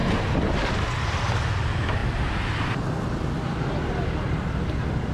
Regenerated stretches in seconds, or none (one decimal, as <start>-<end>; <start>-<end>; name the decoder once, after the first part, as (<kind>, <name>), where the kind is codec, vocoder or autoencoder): none